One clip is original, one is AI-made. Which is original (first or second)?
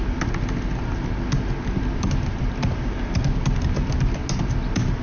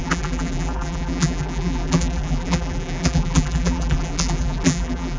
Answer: first